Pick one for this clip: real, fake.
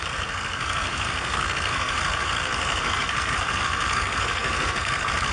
fake